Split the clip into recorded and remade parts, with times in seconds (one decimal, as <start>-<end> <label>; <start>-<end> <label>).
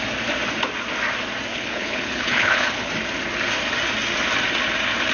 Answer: 0.0-1.5 recorded; 1.5-2.9 remade; 2.9-5.1 recorded